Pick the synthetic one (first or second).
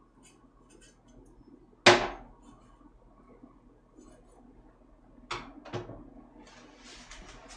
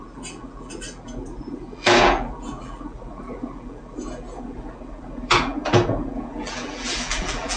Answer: second